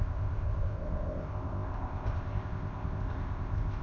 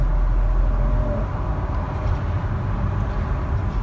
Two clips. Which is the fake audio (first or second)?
first